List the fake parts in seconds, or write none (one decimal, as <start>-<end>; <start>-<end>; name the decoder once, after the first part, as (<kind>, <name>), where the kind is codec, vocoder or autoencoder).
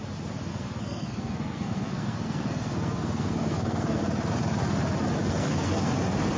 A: 0.5-4.0 (codec, SNAC); 5.2-5.9